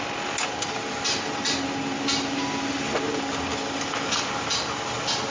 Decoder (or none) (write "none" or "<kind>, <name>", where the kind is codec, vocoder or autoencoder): none